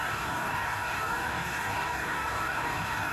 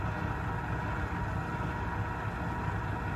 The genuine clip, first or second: second